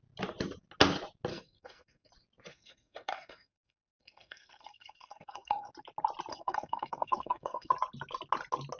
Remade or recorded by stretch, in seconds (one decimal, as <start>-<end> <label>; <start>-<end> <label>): 0.0-1.3 recorded; 1.3-2.1 remade; 2.1-2.5 recorded; 2.5-5.7 remade; 5.7-6.3 recorded; 6.3-7.7 remade; 7.7-8.8 recorded